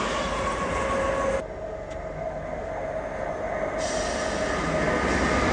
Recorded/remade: recorded